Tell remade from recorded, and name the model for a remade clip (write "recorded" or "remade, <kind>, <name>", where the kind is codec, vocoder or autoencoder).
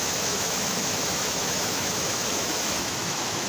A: remade, autoencoder, DAC-VAE